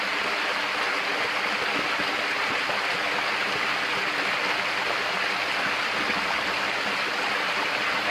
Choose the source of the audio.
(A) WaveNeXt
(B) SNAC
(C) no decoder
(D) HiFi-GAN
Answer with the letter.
C